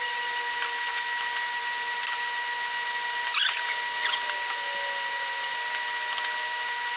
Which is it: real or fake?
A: real